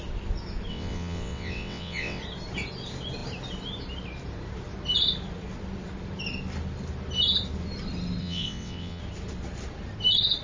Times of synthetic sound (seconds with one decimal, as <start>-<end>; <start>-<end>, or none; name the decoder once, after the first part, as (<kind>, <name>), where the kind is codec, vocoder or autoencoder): 0.7-2.2 (vocoder, WaveNeXt); 8.2-9.0